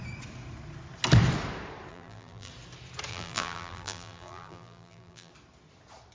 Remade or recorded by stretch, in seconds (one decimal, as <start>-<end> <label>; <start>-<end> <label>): 0.0-1.9 recorded; 1.9-2.5 remade; 2.5-3.1 recorded; 3.1-5.3 remade; 5.3-6.1 recorded